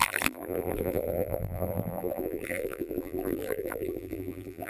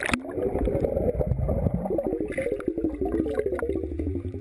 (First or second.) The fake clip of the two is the first